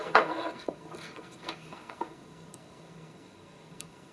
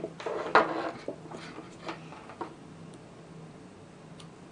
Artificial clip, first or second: first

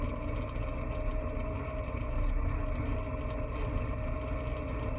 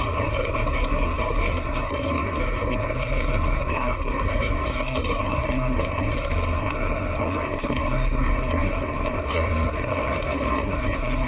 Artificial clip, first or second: second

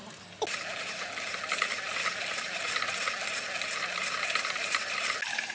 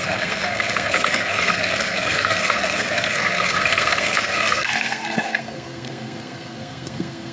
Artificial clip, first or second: second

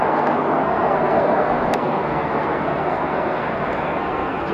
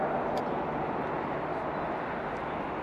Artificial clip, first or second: first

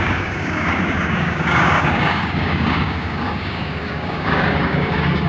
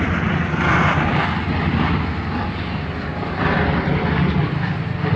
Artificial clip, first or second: first